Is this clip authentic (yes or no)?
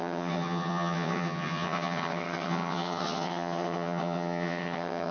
no